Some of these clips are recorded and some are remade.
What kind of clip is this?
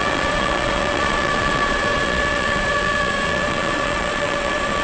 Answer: remade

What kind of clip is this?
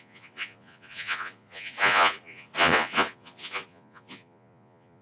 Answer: remade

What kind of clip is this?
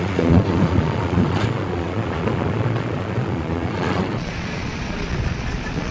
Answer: remade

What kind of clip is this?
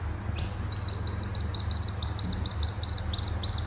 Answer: recorded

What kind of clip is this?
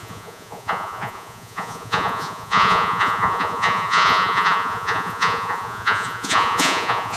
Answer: remade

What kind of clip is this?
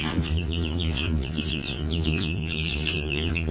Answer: remade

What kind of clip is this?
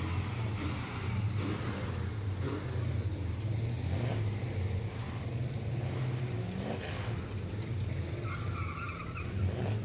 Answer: recorded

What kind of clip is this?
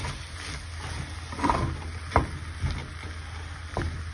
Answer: recorded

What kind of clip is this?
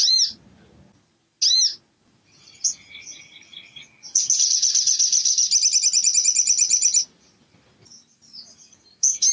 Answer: recorded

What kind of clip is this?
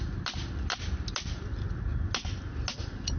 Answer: recorded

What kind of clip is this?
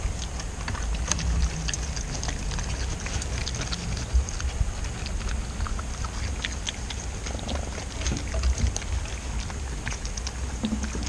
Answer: recorded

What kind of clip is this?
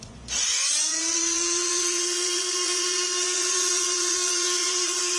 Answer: remade